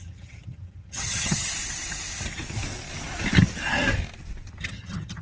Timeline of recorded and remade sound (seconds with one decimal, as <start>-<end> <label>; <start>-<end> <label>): 0.0-1.5 remade; 1.5-4.6 recorded; 4.6-5.2 remade